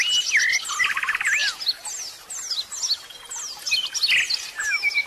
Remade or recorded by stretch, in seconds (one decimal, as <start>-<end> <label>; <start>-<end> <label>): 0.0-5.1 recorded